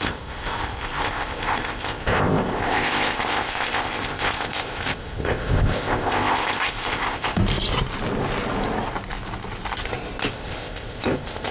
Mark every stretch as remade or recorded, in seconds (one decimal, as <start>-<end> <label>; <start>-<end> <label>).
0.0-7.4 remade; 7.4-10.3 recorded; 10.3-11.5 remade